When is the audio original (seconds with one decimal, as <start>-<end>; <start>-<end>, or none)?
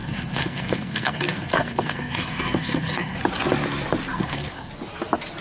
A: 3.2-4.1; 4.7-5.4